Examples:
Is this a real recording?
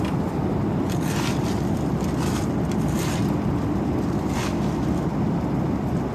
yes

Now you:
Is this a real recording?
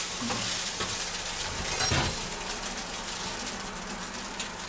yes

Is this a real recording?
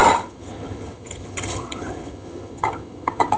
no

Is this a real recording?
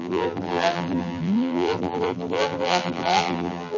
no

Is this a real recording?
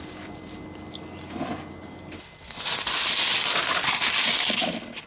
yes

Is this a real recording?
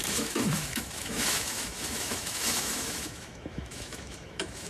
no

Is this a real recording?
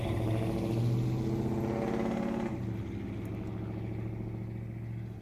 yes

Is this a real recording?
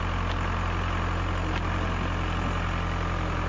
yes